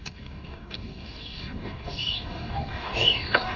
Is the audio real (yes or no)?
no